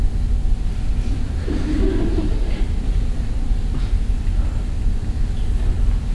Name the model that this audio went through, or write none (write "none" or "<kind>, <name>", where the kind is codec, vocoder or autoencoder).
none